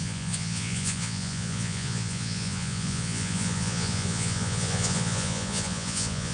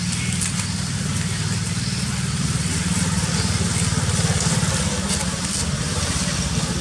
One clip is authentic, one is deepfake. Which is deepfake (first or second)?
first